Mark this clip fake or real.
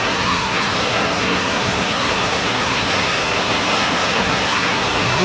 fake